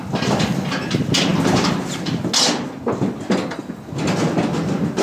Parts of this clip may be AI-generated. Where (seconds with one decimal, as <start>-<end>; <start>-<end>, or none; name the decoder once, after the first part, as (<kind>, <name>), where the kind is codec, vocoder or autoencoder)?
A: none